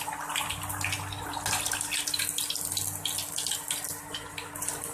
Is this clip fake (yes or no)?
no